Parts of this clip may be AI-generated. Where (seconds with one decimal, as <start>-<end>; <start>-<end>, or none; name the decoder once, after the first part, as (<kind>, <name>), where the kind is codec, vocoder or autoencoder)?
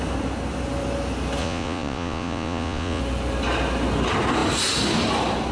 1.4-3.0 (vocoder, Vocos)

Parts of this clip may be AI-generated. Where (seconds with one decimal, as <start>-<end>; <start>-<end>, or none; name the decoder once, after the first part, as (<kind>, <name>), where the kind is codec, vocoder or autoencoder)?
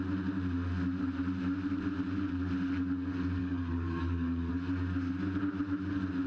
3.4-4.5 (codec, DAC)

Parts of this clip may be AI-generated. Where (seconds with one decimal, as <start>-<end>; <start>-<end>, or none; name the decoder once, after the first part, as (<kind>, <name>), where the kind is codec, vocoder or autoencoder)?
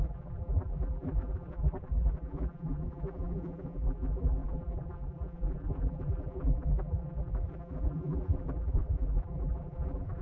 0.0-10.2 (vocoder, BigVGAN v2)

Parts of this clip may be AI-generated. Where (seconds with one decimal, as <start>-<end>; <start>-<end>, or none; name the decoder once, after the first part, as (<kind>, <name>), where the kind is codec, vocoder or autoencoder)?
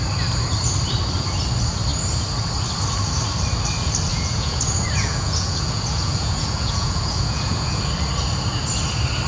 4.1-7.8 (vocoder, Vocos)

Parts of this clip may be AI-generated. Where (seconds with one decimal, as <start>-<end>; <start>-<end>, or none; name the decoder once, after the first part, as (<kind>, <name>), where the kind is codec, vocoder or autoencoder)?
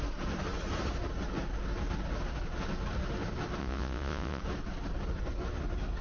3.6-4.4 (vocoder, Vocos)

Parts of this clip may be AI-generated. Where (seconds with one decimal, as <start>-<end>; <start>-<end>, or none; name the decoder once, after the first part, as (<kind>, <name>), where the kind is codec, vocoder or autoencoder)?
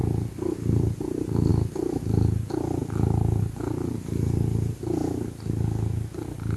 none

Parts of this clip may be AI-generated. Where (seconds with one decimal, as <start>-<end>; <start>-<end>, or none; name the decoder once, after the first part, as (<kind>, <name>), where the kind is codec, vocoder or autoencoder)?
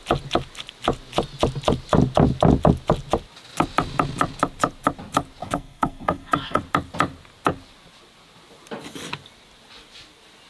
5.4-6.6 (codec, SNAC)